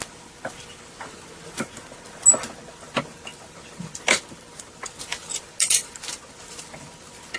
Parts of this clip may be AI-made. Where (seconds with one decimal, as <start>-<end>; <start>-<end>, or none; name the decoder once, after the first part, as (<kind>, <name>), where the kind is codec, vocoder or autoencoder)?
none